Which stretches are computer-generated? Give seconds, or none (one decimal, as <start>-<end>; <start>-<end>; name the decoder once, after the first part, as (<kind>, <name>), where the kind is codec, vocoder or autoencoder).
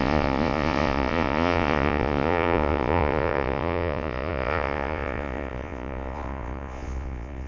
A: 0.0-7.5 (vocoder, Vocos)